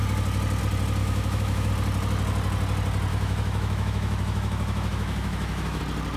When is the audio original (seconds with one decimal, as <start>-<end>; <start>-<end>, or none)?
0.0-1.0; 1.7-3.1; 5.8-6.2